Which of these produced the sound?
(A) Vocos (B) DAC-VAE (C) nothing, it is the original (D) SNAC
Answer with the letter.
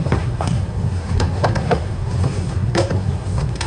D